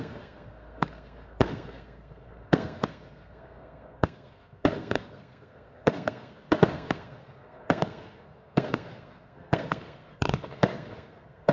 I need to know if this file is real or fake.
fake